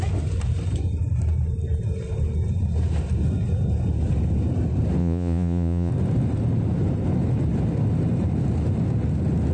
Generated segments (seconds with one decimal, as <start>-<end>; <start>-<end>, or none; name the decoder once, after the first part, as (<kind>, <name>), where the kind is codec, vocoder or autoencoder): 5.0-5.9 (vocoder, Vocos)